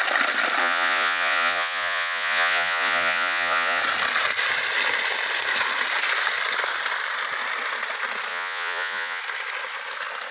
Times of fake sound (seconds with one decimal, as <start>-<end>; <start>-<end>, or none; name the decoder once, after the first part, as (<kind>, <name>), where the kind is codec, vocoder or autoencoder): 0.6-3.8 (vocoder, Vocos); 8.3-9.2